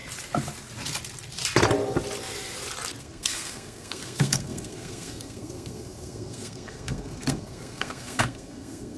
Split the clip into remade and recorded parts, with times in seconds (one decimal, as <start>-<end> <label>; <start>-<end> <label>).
0.0-3.0 recorded; 3.0-9.0 remade